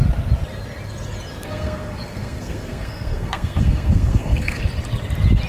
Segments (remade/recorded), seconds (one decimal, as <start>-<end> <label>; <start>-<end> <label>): 0.0-1.3 recorded; 1.3-4.6 remade; 4.6-5.5 recorded